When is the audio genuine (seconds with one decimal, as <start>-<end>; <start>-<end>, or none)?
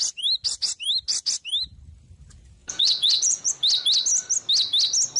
0.0-2.6; 3.5-5.2